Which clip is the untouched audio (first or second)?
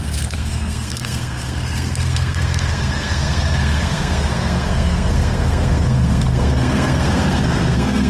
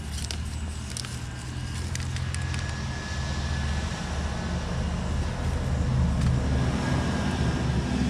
second